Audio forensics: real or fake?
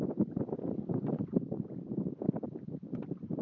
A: real